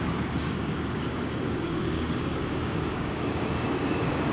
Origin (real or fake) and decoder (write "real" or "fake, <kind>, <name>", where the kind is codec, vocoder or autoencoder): fake, codec, DAC